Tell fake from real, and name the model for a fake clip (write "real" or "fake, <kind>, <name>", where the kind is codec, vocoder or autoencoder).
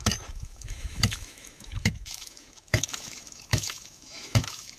fake, autoencoder, DAC-VAE